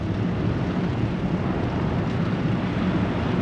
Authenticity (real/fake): real